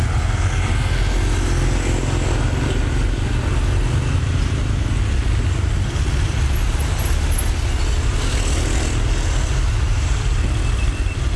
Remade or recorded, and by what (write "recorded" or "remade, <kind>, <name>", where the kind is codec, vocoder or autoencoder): recorded